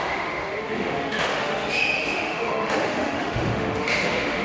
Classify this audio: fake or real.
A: fake